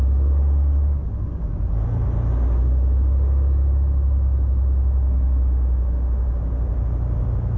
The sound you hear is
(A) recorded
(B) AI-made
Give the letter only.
A